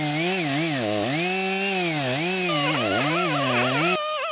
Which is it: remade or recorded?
recorded